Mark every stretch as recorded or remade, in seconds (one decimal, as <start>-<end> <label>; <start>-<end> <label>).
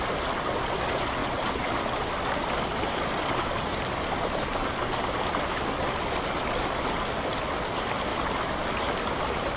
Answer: 0.0-3.7 recorded; 3.7-4.8 remade; 4.8-9.6 recorded